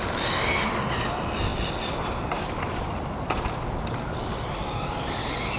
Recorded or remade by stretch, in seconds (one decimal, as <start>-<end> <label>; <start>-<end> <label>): 0.0-1.5 recorded; 1.5-4.9 remade; 4.9-5.6 recorded